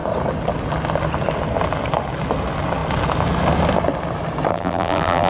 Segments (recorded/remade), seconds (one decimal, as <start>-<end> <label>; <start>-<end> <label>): 0.0-4.5 recorded; 4.5-5.3 remade